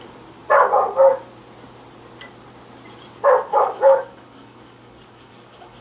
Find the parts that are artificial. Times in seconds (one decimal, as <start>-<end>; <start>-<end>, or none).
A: 3.5-5.8

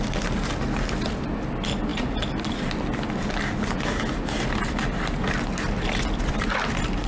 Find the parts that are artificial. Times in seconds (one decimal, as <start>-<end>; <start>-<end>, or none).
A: none

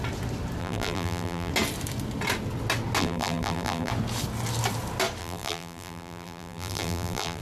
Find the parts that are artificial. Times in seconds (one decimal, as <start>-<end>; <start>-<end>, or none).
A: 0.6-1.5; 3.0-3.9; 5.2-7.4

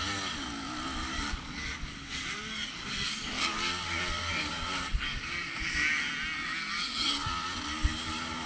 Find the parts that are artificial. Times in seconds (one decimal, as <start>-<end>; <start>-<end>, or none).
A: 1.0-6.1; 6.7-7.3; 7.9-8.5

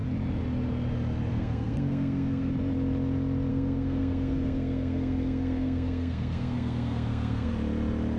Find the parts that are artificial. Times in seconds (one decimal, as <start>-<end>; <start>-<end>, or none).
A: 1.3-2.5; 3.5-7.5

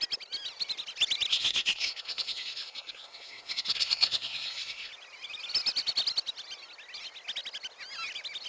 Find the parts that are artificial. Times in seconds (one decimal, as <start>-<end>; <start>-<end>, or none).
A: 1.3-4.9

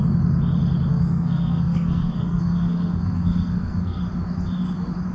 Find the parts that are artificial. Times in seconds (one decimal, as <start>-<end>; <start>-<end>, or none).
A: 0.9-4.0

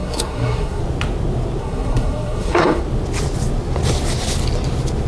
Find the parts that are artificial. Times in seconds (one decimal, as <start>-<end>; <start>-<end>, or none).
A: 0.0-0.8; 1.6-2.8